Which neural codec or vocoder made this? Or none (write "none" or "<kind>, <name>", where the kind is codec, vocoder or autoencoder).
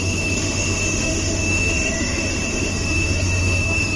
autoencoder, DAC-VAE